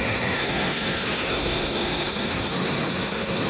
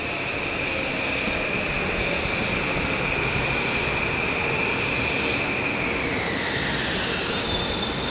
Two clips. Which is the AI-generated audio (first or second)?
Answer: first